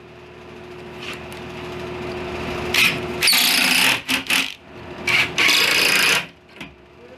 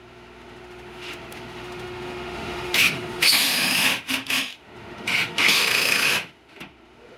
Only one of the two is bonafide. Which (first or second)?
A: first